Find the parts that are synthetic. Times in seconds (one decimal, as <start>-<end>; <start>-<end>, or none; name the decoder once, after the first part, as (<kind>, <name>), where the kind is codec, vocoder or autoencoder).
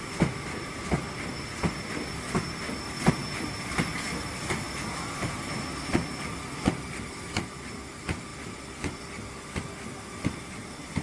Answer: none